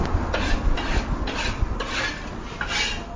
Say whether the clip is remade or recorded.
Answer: recorded